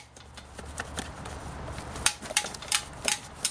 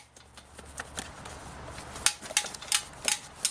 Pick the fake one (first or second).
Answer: first